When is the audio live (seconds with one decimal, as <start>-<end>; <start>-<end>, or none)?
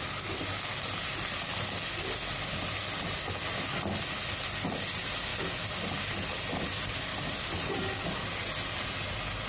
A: 0.0-9.5